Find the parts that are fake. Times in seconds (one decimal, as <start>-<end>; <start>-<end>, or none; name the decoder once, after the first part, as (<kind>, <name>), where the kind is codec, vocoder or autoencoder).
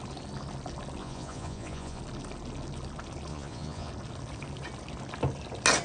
1.0-2.0 (vocoder, Vocos); 3.3-3.9